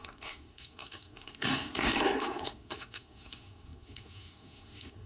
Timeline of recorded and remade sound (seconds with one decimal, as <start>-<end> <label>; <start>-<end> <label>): 0.0-5.1 remade